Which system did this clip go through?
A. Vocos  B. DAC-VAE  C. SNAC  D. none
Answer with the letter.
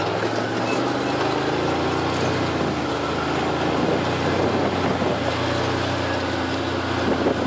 D